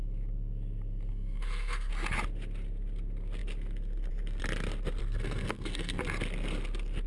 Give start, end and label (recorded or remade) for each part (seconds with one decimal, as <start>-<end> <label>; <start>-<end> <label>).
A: 0.0-1.1 recorded; 1.1-1.9 remade; 1.9-5.0 recorded; 5.0-6.0 remade; 6.0-7.1 recorded